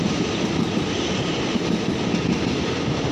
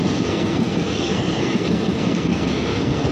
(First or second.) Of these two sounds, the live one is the first